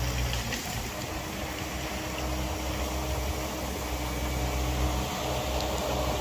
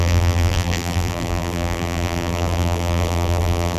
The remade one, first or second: second